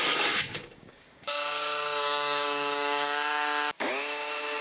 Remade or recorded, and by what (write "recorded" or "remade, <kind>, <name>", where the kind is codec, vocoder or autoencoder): remade, codec, DAC